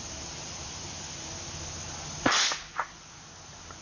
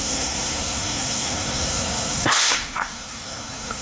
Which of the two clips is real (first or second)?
first